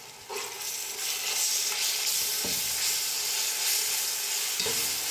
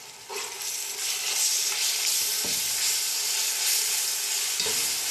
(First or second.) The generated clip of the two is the second